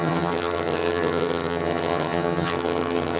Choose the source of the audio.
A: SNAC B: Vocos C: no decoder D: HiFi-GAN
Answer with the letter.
D